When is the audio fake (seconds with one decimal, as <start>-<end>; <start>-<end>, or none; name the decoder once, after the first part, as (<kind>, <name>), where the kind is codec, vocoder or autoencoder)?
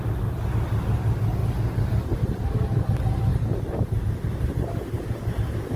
none